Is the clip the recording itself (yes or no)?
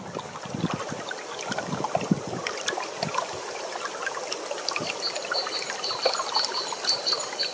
yes